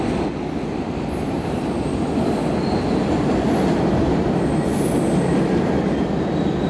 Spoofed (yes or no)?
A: no